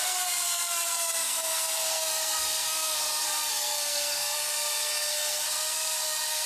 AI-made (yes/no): yes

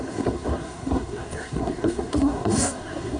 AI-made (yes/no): yes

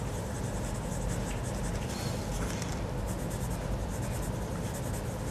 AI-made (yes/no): no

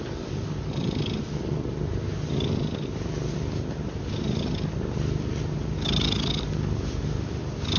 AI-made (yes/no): no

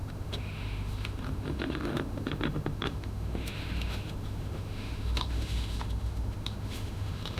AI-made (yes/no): yes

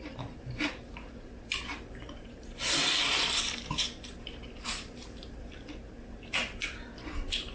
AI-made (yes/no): yes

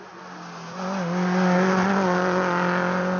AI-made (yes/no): no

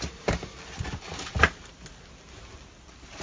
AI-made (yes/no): no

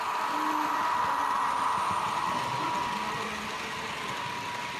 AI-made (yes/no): no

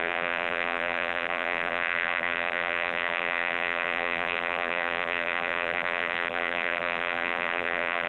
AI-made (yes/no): yes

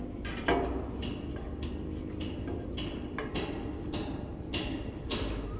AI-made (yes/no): no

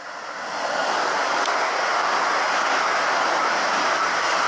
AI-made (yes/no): no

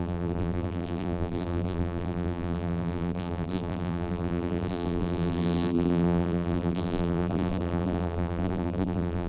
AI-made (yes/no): yes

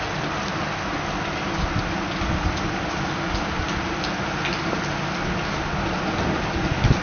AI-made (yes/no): no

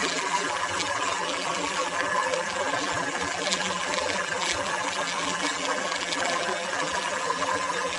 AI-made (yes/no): yes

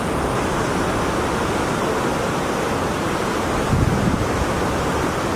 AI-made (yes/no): no